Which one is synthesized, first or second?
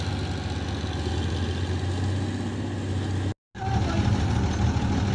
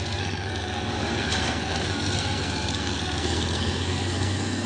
second